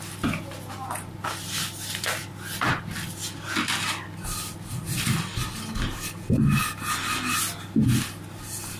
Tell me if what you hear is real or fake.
real